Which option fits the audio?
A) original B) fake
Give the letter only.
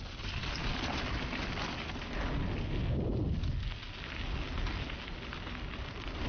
A